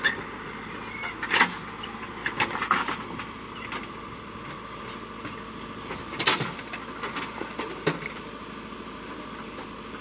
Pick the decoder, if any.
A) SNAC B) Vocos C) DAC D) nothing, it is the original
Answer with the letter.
D